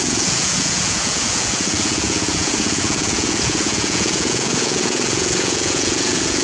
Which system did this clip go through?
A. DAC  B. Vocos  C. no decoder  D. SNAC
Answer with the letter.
B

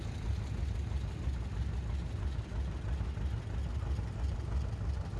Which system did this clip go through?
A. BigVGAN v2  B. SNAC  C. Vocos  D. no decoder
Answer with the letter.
D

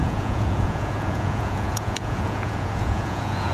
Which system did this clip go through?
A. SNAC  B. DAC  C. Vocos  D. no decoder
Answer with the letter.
C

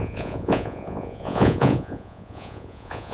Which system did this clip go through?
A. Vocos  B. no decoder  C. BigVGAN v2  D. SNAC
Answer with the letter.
A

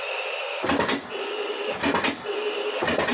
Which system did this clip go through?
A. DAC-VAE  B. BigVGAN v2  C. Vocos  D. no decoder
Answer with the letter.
D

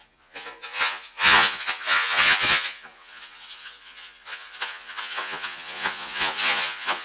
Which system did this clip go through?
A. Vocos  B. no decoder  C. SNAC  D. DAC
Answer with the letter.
A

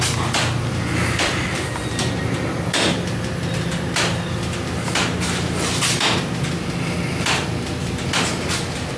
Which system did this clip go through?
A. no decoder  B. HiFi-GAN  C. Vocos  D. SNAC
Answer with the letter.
A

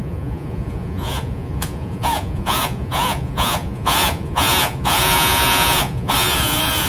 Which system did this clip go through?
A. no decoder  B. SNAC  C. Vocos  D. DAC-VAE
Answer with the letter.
C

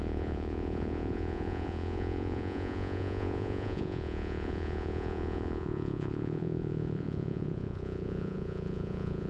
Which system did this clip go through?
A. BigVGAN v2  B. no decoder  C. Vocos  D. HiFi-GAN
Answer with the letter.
C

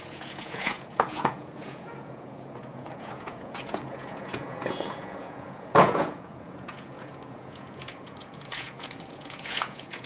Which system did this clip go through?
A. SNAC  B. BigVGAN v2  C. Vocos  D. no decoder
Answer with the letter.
C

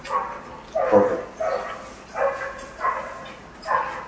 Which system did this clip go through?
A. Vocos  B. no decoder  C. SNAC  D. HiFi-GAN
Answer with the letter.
B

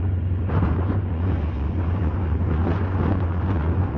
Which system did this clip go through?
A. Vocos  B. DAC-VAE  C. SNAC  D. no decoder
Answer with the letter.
A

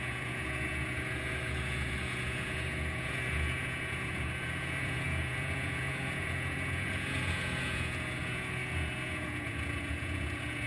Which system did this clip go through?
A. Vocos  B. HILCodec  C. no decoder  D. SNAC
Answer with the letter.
A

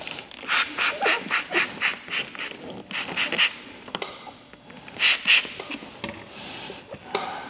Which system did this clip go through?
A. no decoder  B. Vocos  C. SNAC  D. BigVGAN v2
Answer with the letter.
A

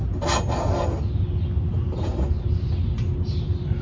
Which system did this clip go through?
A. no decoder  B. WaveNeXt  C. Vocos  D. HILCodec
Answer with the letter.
A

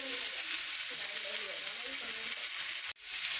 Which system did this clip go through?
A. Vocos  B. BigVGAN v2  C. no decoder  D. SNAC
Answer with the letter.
C